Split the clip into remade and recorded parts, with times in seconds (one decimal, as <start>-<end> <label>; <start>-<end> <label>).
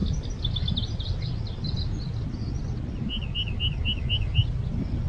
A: 0.0-5.1 recorded